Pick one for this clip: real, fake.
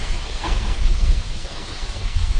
fake